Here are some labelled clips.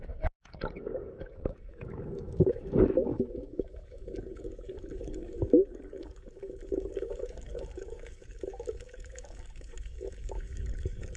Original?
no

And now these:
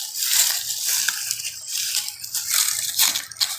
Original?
yes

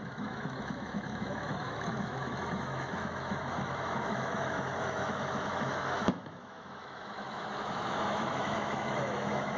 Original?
no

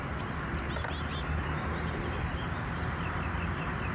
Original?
yes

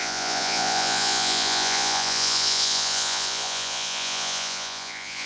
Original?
no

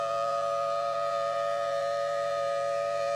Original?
no